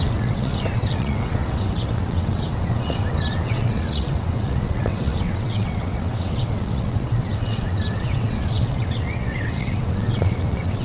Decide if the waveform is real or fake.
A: fake